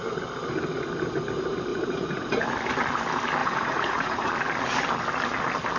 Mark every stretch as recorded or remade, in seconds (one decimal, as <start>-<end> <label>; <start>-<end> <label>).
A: 0.0-1.7 recorded; 1.7-2.4 remade; 2.4-3.4 recorded; 3.4-4.3 remade; 4.3-5.8 recorded